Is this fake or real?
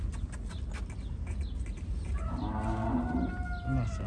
real